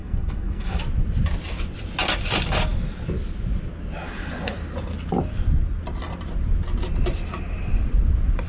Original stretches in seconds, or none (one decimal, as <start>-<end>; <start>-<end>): 0.8-8.5